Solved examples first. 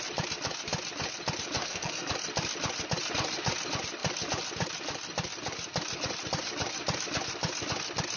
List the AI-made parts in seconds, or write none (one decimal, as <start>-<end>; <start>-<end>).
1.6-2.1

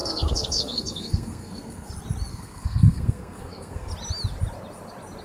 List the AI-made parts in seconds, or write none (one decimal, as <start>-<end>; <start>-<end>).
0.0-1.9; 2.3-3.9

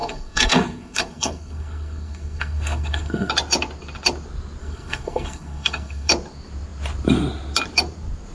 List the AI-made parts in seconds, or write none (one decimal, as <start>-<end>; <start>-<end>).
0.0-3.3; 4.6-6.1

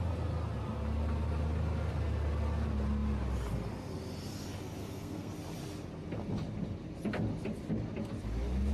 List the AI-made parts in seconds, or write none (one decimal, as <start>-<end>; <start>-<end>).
4.8-5.3

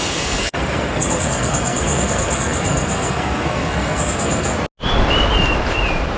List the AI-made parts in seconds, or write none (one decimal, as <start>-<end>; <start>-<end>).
0.0-4.5

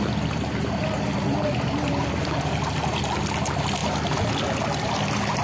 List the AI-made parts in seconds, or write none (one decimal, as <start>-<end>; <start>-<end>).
none